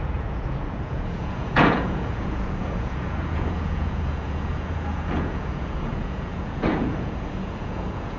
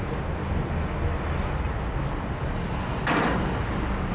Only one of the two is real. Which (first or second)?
second